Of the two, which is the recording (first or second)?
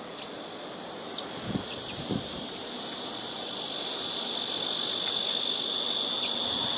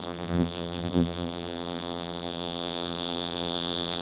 first